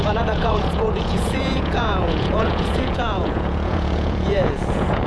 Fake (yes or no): yes